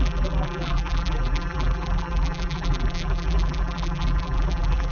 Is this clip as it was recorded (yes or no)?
no